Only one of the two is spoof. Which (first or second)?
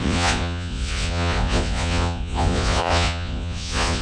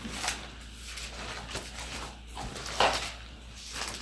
first